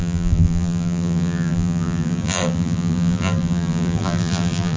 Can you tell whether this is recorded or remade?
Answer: remade